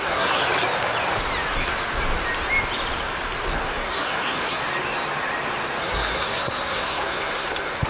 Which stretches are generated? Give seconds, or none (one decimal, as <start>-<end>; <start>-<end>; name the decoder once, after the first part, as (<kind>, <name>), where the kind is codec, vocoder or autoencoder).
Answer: 0.0-0.4 (codec, SNAC); 3.5-4.6; 5.8-7.9